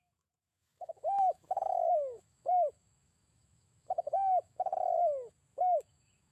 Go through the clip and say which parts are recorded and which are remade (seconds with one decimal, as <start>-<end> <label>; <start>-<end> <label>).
0.0-4.7 remade; 4.7-5.5 recorded; 5.5-6.3 remade